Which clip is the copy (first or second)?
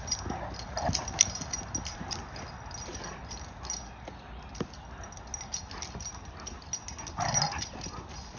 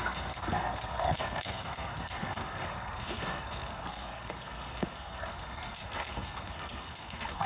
second